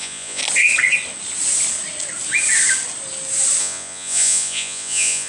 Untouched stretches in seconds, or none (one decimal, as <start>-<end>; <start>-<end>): 0.4-3.6

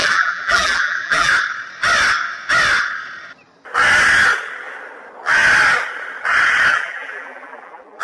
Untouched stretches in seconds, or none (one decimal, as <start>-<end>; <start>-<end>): 1.3-6.7

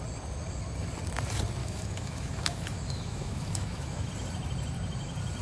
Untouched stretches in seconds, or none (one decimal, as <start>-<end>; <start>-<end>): 0.0-1.6; 4.1-5.4

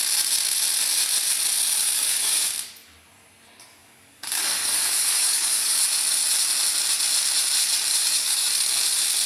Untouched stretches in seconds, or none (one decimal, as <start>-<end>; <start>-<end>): 0.0-1.8; 2.5-3.8; 5.8-7.9; 8.5-9.3

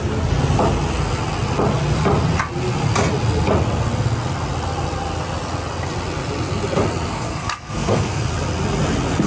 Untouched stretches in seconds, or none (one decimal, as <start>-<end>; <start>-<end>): 0.0-7.1; 8.2-9.3

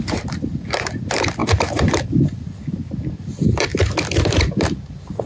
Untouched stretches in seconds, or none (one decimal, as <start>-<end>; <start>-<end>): 3.7-4.2

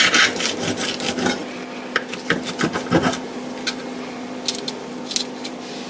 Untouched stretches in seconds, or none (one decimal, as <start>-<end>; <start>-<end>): 0.0-5.9